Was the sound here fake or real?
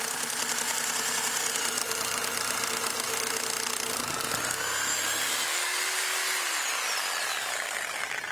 real